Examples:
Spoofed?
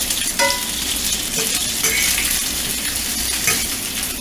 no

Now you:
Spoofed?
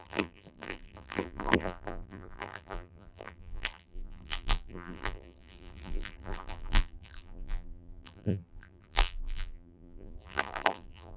yes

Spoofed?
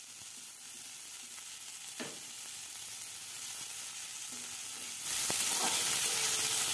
no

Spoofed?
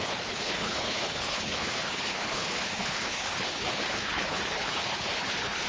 yes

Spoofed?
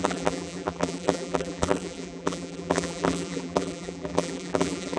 yes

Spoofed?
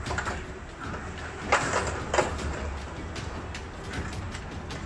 no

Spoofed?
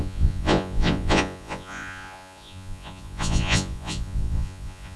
yes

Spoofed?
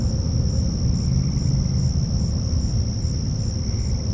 no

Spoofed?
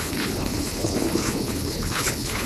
yes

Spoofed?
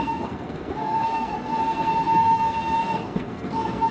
yes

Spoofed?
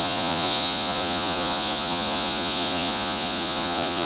yes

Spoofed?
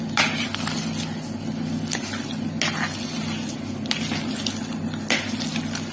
no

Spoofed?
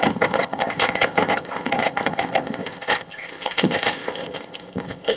yes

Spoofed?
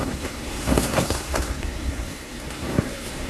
yes